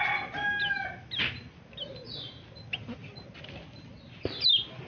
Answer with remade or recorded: recorded